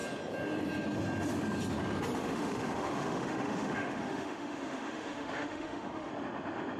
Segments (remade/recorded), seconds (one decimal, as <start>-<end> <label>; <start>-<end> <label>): 0.0-2.2 recorded; 2.2-6.1 remade; 6.1-6.8 recorded